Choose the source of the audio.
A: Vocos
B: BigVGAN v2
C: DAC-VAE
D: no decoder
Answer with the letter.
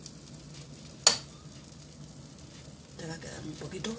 D